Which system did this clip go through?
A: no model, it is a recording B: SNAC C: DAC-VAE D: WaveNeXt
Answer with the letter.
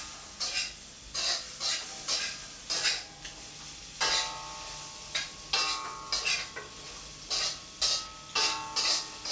A